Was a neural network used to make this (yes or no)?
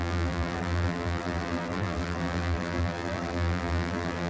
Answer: yes